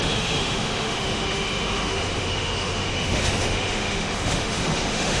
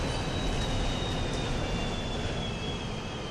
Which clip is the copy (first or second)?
first